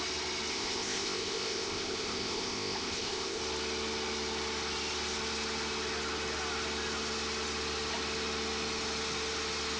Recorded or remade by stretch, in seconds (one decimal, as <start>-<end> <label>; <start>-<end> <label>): 0.0-0.5 recorded; 0.5-3.4 remade; 3.4-9.8 recorded